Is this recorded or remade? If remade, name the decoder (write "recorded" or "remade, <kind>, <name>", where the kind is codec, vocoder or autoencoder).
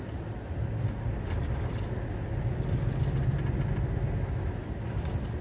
recorded